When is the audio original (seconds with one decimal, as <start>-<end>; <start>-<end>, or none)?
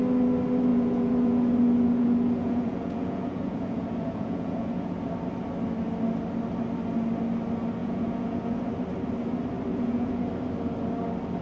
0.0-0.7; 5.1-7.8; 8.7-9.7; 10.3-11.4